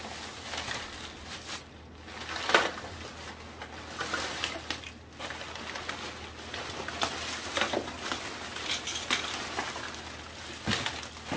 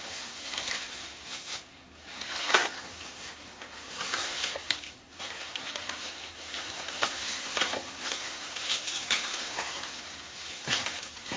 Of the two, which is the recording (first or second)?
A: first